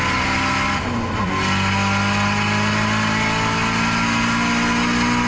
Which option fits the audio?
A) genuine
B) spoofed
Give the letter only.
A